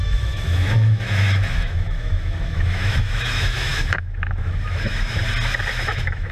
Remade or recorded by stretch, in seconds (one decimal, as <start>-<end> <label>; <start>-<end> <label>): 0.0-5.2 remade; 5.2-5.7 recorded; 5.7-6.3 remade

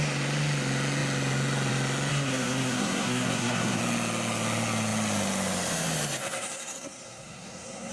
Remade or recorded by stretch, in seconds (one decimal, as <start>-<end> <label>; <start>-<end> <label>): 0.0-2.1 recorded; 2.1-3.8 remade; 3.8-6.2 recorded; 6.2-7.9 remade